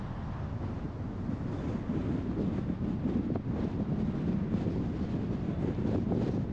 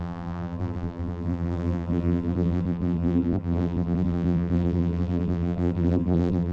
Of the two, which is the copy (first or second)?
second